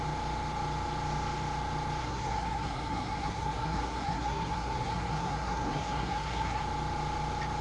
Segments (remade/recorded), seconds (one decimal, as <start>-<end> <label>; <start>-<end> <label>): 0.0-2.0 recorded; 2.0-6.6 remade; 6.6-7.6 recorded